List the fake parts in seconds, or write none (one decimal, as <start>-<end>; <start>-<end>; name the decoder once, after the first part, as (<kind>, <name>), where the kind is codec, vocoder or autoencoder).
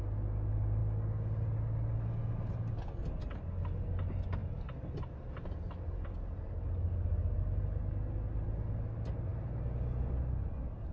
none